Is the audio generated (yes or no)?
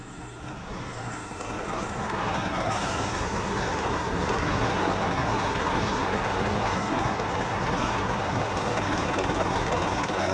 yes